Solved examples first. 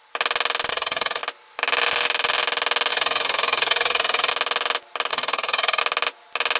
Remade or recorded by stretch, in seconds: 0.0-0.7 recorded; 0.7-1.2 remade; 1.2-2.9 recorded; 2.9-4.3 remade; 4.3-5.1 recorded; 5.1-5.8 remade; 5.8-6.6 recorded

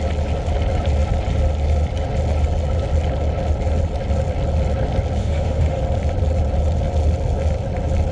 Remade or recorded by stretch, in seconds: 0.0-5.2 recorded; 5.2-5.8 remade; 5.8-8.1 recorded